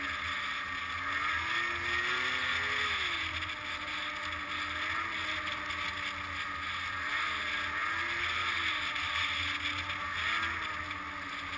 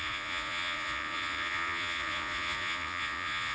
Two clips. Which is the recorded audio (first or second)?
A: first